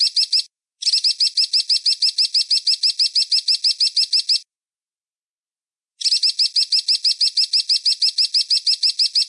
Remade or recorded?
recorded